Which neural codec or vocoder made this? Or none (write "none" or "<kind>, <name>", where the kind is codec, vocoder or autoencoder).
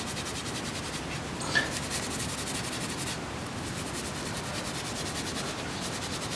none